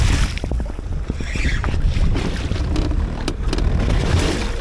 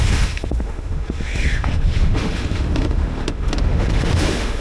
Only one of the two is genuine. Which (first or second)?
first